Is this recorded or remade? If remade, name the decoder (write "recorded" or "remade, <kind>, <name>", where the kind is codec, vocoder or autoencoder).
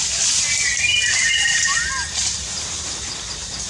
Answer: recorded